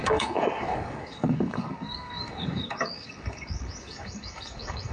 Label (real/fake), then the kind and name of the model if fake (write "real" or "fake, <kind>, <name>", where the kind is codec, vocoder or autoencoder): fake, codec, DAC